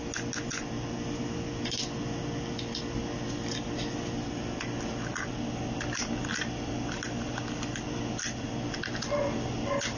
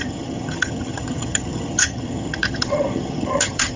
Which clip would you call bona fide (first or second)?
first